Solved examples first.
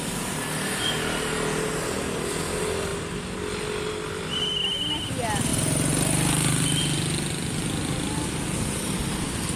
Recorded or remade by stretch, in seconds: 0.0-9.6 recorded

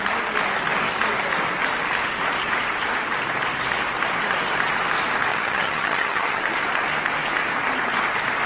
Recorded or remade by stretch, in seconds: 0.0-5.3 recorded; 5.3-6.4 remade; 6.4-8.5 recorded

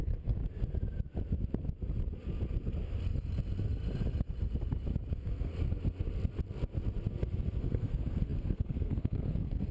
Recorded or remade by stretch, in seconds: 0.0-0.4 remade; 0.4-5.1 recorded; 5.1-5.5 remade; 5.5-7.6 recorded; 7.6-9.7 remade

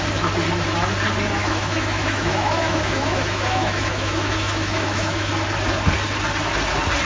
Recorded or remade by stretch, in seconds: 0.0-1.4 recorded; 1.4-5.3 remade; 5.3-7.0 recorded

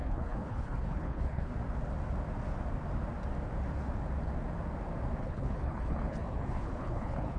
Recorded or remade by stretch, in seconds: 0.0-1.5 remade; 1.5-5.2 recorded; 5.2-7.4 remade